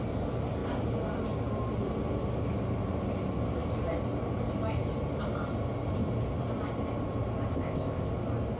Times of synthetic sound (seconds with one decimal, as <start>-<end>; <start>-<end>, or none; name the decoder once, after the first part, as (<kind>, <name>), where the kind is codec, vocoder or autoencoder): 7.5-8.1 (codec, ZipCodec)